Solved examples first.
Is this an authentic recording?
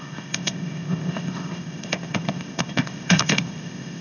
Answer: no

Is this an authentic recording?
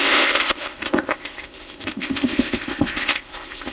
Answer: no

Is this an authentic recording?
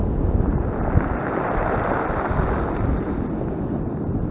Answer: yes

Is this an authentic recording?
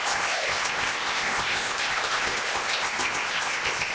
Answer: no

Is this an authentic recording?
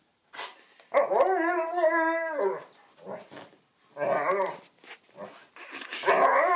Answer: yes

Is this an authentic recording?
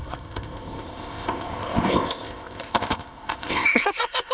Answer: no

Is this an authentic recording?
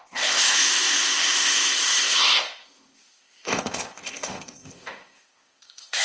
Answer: no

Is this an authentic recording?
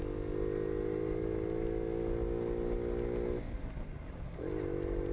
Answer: yes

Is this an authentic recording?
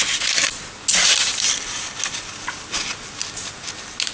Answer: yes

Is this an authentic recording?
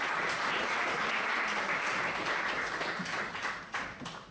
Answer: yes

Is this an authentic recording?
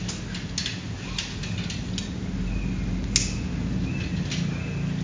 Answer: yes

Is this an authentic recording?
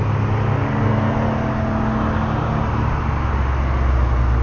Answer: yes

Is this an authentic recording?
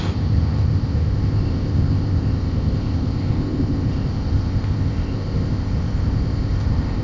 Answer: no